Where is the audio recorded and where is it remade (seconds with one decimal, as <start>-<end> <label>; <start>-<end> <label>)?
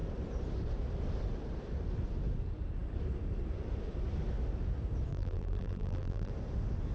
0.0-5.1 recorded; 5.1-6.3 remade; 6.3-6.9 recorded